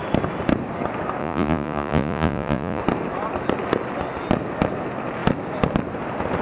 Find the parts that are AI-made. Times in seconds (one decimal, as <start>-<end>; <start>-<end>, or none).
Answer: 1.2-2.8